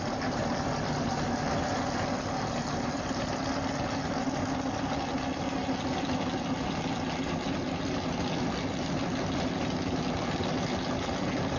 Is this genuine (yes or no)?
yes